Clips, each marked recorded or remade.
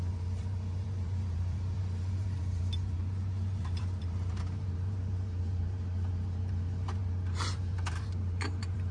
remade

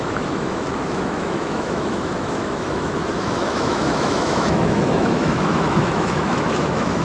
remade